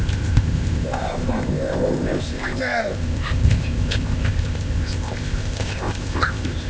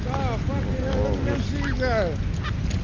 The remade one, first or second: first